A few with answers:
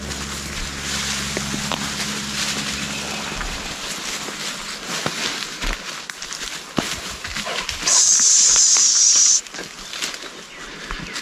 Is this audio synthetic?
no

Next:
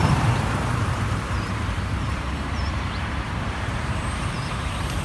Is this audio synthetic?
yes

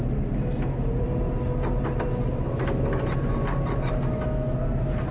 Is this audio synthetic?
no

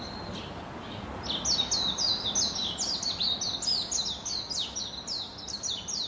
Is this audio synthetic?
no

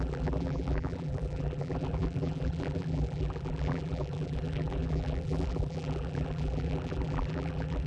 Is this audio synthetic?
yes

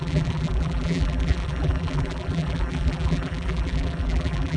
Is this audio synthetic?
yes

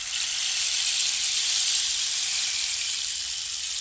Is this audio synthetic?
no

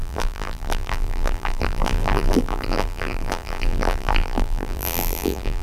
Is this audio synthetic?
yes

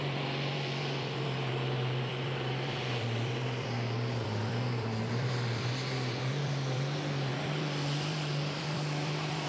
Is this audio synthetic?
yes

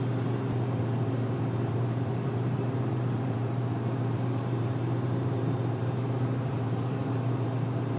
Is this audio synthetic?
yes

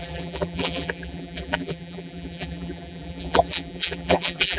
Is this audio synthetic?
yes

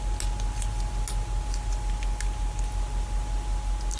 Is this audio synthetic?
no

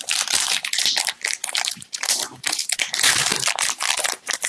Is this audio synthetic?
yes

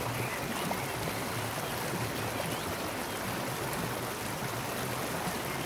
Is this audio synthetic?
no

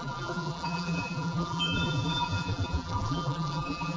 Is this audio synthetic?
yes